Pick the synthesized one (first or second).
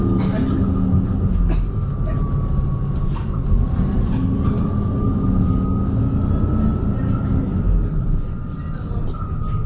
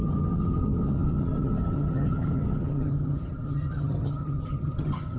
second